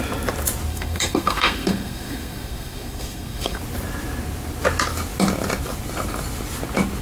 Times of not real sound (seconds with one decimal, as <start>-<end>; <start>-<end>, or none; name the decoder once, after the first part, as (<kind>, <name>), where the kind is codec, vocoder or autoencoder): 0.7-3.6 (codec, SNAC)